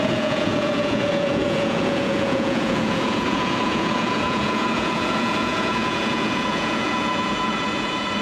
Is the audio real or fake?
fake